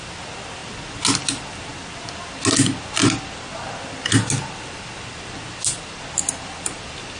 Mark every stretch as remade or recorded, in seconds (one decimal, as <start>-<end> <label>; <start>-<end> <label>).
0.0-7.2 recorded